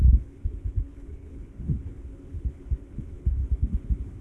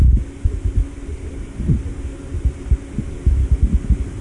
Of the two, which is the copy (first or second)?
first